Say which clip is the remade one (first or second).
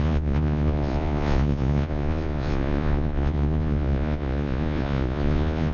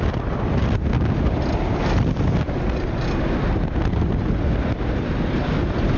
first